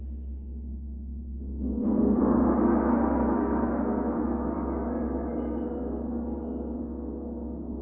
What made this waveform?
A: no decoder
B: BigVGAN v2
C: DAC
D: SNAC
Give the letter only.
D